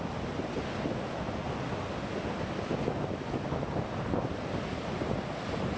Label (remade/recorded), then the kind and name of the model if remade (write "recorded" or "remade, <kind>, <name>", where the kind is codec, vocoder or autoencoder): recorded